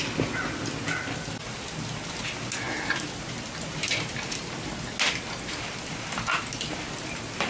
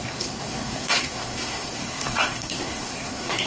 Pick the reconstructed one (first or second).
second